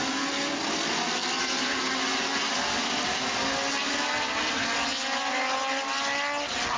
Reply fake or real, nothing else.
real